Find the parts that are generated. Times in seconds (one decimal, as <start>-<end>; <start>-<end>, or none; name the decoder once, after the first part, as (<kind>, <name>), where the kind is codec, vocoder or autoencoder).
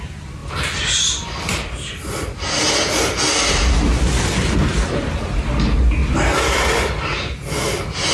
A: 4.7-5.2 (vocoder, BigVGAN v2); 6.0-7.2